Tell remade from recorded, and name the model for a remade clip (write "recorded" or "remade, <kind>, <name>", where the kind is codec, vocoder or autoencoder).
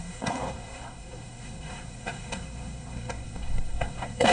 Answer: remade, codec, SNAC